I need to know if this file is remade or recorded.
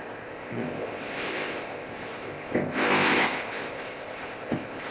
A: remade